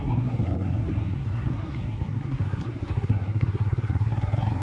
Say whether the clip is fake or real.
fake